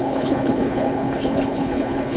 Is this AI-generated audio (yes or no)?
yes